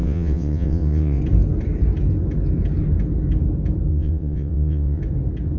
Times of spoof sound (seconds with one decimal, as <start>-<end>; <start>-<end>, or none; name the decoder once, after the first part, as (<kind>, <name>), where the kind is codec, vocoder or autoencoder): 0.0-1.2 (vocoder, WaveNeXt); 3.9-5.0

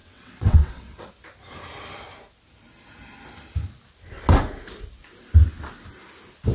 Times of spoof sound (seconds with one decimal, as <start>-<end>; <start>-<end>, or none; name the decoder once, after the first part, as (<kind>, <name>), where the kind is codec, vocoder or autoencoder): 0.0-1.1 (vocoder, WaveNeXt)

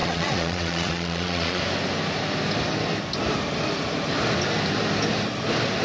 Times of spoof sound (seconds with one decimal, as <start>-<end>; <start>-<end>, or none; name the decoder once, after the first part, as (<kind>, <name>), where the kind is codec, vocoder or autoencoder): 0.0-1.6 (vocoder, Vocos)